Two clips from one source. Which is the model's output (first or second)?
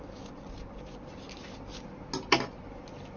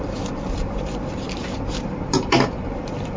second